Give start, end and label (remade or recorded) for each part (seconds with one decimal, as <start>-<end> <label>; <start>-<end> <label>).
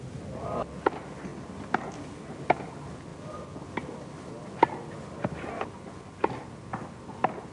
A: 0.0-7.5 recorded